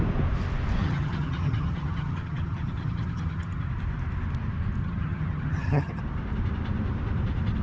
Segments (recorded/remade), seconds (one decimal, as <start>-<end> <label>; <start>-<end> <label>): 0.0-0.8 recorded; 0.8-3.7 remade; 3.7-4.8 recorded; 4.8-6.0 remade; 6.0-7.6 recorded